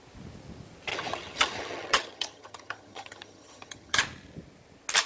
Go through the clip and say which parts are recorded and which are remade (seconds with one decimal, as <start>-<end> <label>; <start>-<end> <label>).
0.0-0.9 recorded; 0.9-4.0 remade; 4.0-5.1 recorded